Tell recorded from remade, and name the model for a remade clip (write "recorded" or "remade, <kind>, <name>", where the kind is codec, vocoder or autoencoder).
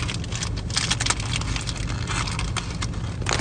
recorded